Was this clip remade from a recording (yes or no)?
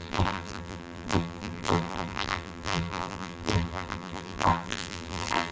yes